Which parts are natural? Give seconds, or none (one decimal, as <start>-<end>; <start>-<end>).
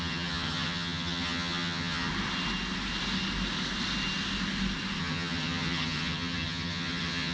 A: 2.1-5.0